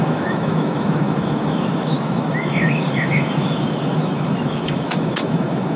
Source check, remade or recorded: remade